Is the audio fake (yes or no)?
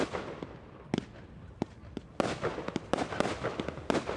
no